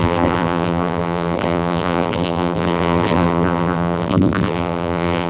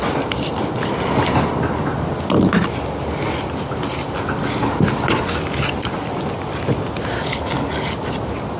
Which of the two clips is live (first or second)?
second